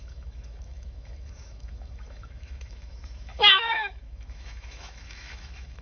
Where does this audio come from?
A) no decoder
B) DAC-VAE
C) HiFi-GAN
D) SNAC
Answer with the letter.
B